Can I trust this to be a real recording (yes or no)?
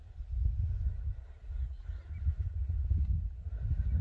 yes